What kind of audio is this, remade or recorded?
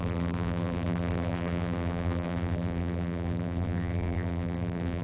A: remade